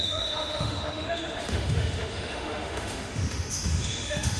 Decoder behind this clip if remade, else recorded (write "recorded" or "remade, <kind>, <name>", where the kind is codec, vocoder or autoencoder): remade, autoencoder, DAC-VAE